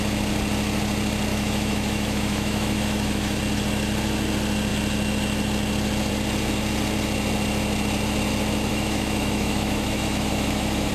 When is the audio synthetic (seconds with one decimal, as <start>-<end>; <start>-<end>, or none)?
1.3-3.4; 8.7-10.9